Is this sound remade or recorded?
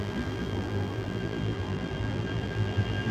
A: remade